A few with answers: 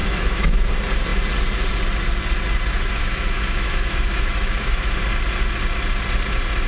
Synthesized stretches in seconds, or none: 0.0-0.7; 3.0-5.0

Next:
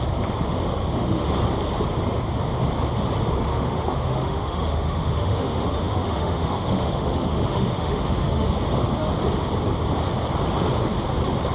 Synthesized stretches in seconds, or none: 0.8-1.3; 3.5-8.5

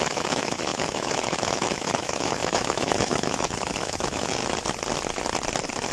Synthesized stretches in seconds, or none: 0.0-4.4